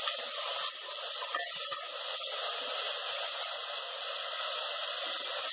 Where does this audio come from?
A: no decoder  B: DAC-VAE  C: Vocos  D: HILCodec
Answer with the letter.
A